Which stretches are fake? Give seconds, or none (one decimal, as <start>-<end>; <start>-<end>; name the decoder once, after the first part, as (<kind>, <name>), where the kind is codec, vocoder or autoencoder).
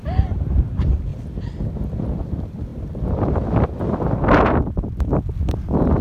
0.0-1.1 (vocoder, BigVGAN v2); 1.8-6.0